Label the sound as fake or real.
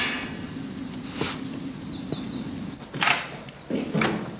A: real